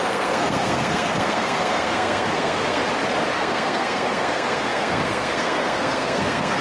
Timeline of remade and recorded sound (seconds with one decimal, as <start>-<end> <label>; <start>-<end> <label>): 0.0-2.8 remade; 2.8-3.3 recorded; 3.3-6.6 remade